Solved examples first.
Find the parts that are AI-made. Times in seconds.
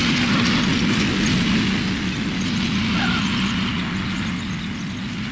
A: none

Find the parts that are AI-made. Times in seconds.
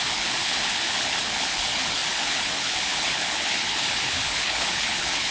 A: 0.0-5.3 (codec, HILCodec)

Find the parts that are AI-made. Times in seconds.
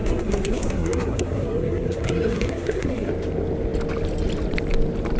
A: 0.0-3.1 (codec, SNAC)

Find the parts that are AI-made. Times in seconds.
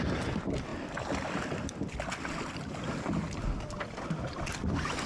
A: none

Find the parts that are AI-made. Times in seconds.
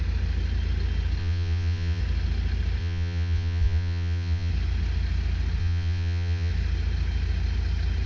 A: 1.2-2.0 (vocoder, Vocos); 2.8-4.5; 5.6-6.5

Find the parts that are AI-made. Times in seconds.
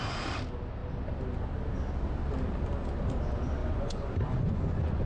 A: 3.6-5.1 (vocoder, Vocos)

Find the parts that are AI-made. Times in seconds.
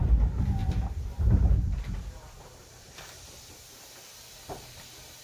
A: 0.6-3.7 (vocoder, BigVGAN v2)